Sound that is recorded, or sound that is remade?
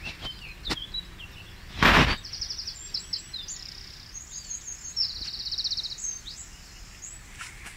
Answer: recorded